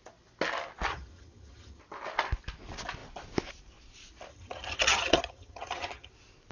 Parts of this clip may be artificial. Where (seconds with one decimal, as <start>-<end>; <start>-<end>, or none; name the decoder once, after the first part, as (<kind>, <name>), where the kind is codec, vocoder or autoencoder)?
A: 0.9-1.8 (vocoder, HiFi-GAN); 4.3-6.1